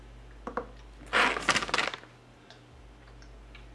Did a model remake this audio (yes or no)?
no